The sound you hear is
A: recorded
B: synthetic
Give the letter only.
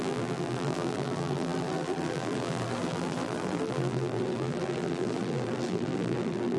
B